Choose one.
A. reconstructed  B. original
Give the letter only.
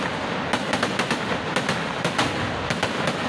B